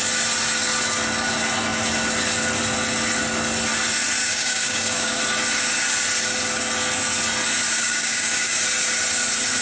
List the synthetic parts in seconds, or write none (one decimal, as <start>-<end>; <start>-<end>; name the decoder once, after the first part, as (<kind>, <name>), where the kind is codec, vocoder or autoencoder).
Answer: 4.2-5.2 (codec, DAC); 7.8-8.6